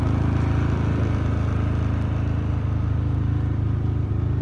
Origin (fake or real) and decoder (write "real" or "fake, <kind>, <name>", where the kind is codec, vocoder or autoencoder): real